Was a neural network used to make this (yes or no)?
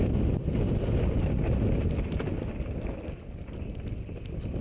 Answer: no